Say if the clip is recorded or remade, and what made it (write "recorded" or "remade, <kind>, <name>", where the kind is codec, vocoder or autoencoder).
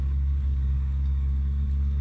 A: remade, codec, DAC